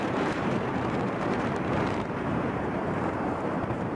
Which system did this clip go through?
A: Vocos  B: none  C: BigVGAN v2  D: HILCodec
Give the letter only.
C